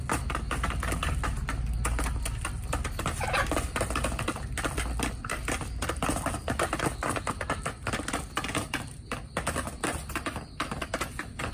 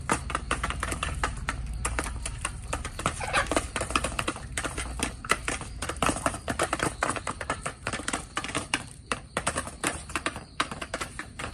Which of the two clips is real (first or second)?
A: first